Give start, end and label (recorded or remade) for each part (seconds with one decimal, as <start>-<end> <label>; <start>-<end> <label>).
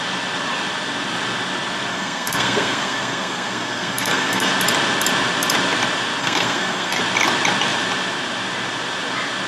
0.0-1.9 recorded; 1.9-4.5 remade; 4.5-6.2 recorded; 6.2-7.0 remade; 7.0-9.5 recorded